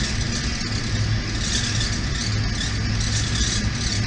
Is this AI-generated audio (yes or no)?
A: no